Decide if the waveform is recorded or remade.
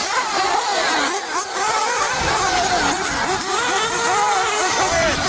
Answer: remade